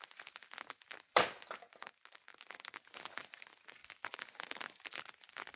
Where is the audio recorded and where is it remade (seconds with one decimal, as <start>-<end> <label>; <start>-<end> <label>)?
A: 0.0-5.6 recorded